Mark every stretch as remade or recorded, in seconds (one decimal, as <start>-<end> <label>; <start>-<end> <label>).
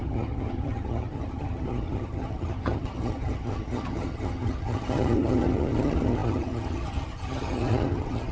0.0-8.3 remade